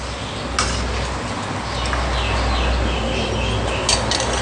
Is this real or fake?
real